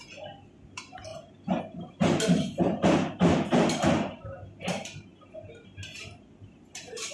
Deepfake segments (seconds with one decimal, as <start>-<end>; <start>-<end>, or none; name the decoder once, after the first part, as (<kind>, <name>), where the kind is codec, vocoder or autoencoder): none